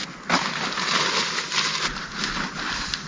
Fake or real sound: real